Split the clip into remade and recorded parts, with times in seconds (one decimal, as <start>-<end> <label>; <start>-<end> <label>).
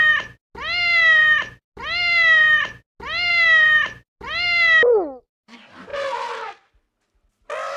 0.0-5.9 recorded; 5.9-6.7 remade; 6.7-7.8 recorded